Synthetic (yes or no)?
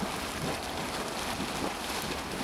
no